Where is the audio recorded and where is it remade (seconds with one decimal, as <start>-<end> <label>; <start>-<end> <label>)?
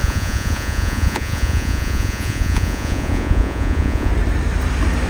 0.0-4.1 remade; 4.1-5.1 recorded